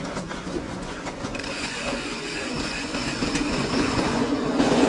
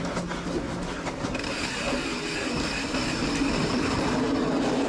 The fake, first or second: first